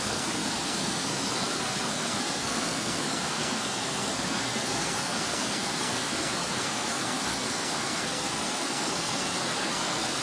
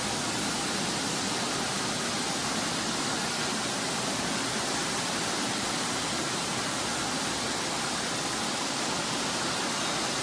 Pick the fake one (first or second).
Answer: first